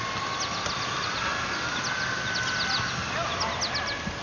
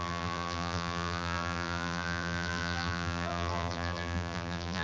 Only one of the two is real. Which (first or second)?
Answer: first